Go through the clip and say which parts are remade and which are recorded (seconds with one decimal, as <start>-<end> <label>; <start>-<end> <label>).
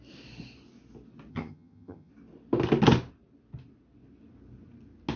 0.0-1.3 recorded; 1.3-2.1 remade; 2.1-5.2 recorded